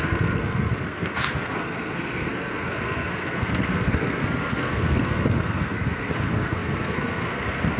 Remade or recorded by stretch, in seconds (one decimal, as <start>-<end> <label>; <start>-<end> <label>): 0.0-7.8 remade